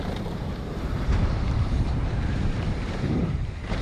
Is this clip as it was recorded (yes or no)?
no